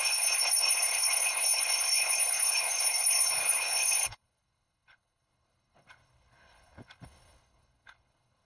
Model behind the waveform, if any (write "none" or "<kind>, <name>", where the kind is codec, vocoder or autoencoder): codec, HILCodec